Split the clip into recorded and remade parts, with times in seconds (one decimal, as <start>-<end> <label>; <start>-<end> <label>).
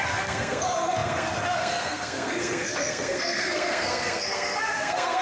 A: 0.0-5.2 remade